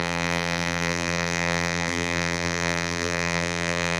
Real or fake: fake